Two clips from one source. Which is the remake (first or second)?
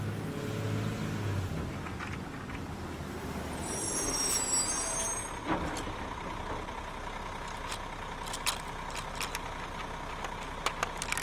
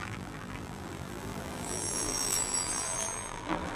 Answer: second